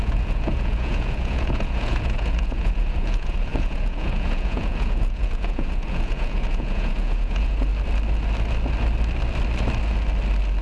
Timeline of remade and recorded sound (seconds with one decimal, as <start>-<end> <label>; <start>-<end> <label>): 0.0-7.7 remade; 7.7-10.6 recorded